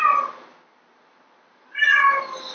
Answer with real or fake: real